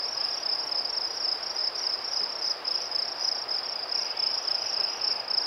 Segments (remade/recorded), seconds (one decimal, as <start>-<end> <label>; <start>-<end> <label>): 0.0-1.6 recorded; 1.6-4.9 remade; 4.9-5.5 recorded